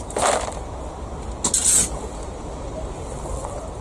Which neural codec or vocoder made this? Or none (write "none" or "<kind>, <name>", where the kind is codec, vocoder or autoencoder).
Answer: none